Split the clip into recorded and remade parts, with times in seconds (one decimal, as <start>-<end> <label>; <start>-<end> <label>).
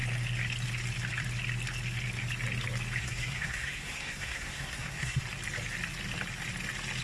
0.0-3.0 recorded; 3.0-5.2 remade; 5.2-7.0 recorded